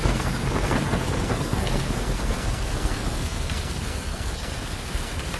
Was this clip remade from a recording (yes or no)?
yes